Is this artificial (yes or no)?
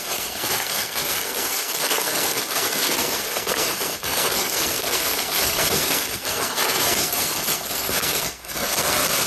yes